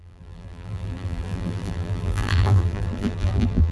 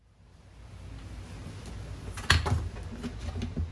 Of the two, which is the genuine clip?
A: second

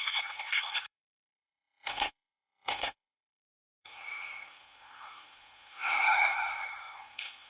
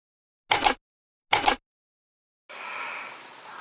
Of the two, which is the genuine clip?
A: second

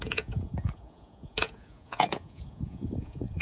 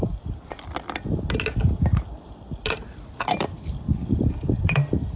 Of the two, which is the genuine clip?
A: second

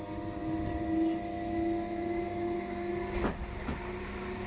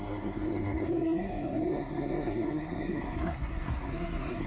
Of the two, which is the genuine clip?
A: first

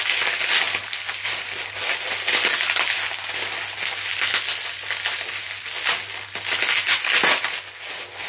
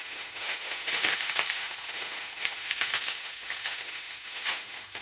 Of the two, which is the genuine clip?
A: first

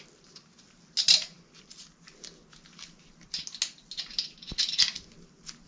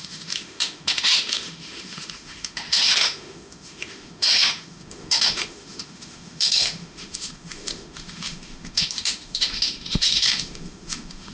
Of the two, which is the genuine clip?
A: first